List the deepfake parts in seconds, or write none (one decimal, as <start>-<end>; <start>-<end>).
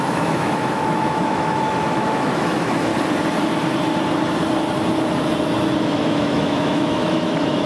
0.0-2.9; 5.8-7.7